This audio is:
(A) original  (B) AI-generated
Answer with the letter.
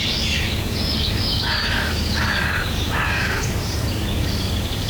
B